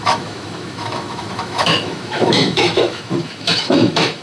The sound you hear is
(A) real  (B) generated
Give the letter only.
B